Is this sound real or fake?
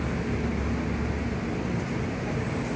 real